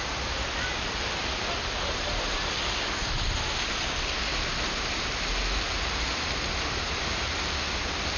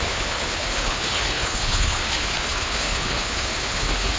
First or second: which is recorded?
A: first